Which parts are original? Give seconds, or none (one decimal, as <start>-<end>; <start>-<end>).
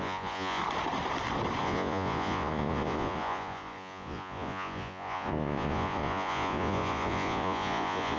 0.6-1.6